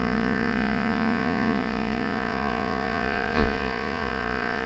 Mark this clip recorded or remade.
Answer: remade